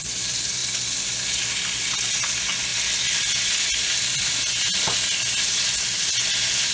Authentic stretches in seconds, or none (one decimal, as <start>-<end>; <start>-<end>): 0.0-6.7